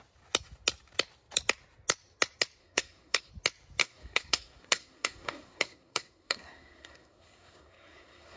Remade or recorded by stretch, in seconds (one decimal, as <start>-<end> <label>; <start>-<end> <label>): 0.0-2.6 recorded; 2.6-3.3 remade; 3.3-3.8 recorded; 3.8-8.4 remade